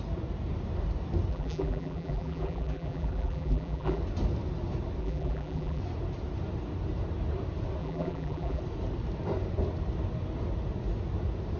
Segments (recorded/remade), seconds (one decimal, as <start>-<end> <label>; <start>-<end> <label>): 0.0-1.3 recorded; 1.3-4.0 remade; 4.0-5.0 recorded; 5.0-5.8 remade; 5.8-7.8 recorded; 7.8-8.6 remade; 8.6-11.6 recorded